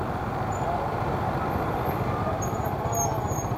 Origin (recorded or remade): recorded